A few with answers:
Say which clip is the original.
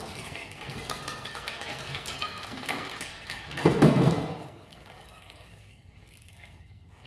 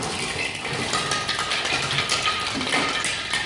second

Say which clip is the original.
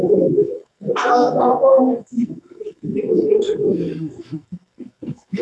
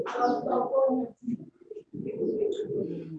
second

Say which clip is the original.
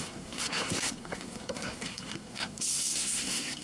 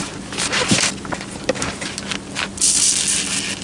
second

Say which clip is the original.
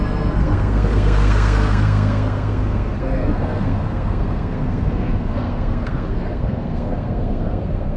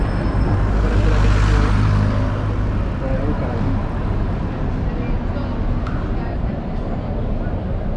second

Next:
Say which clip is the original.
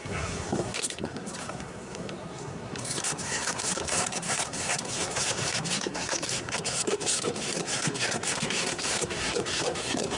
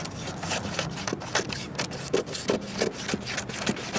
second